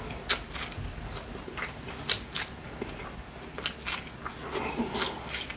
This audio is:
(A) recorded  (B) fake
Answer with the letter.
A